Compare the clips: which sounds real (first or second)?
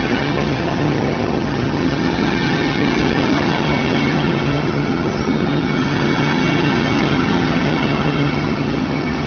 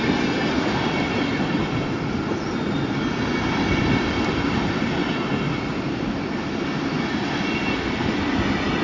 second